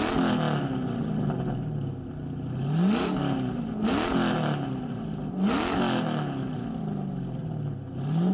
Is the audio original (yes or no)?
yes